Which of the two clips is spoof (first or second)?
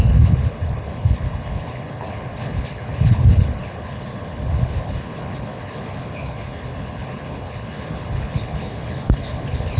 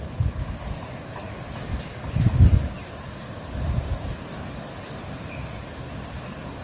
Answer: first